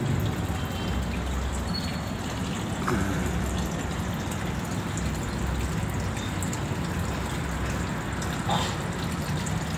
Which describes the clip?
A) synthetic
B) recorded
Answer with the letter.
B